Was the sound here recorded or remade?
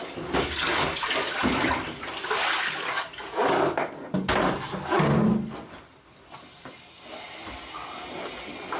recorded